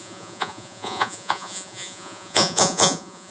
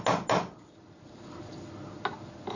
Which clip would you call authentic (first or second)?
second